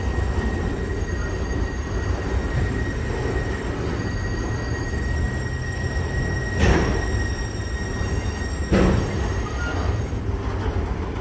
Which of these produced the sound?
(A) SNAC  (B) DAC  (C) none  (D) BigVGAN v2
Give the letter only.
C